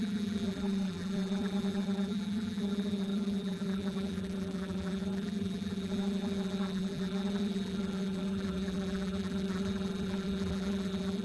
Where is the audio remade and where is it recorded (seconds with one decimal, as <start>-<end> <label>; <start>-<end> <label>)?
0.0-11.2 remade

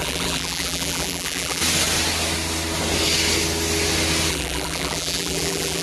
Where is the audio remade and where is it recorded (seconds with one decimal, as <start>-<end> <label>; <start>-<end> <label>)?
0.0-1.6 remade; 1.6-4.3 recorded; 4.3-5.8 remade

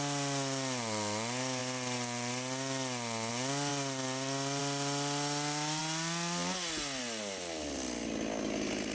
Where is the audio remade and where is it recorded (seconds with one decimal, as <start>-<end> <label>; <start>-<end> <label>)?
0.0-1.6 recorded; 1.6-3.3 remade; 3.3-3.7 recorded; 3.7-4.6 remade; 4.6-8.9 recorded

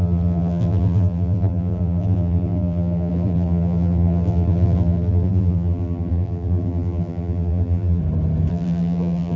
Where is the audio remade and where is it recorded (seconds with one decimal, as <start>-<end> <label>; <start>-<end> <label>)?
0.0-8.0 remade; 8.0-8.5 recorded; 8.5-9.4 remade

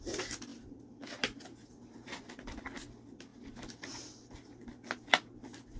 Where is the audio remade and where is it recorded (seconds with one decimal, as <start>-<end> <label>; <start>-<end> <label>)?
0.0-5.8 recorded

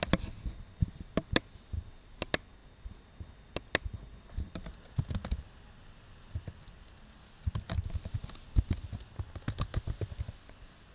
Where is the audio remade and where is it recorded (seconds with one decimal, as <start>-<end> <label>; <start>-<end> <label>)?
0.0-10.9 recorded

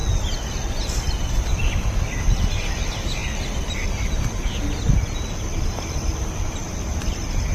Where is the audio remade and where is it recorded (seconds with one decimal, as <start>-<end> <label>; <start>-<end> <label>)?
0.0-7.5 recorded